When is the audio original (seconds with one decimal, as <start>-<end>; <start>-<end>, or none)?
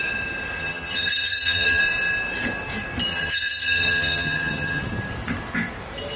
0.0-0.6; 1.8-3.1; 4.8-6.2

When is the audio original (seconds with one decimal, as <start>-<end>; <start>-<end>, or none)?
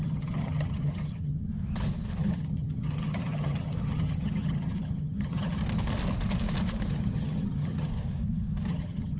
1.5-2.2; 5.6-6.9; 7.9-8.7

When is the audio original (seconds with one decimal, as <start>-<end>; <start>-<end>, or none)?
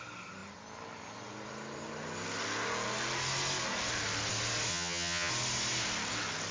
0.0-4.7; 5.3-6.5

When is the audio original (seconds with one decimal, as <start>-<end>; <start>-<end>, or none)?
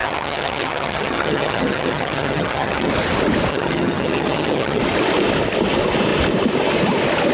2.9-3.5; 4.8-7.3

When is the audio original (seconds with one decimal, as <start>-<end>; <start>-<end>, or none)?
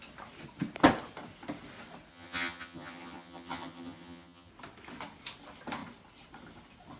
0.0-2.1; 4.5-7.0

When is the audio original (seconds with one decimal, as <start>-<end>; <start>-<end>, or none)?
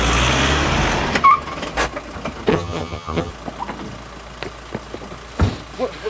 0.0-2.5; 3.3-6.1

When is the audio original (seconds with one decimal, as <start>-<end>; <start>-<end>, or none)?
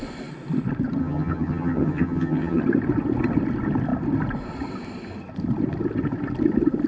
0.0-1.0; 2.6-6.9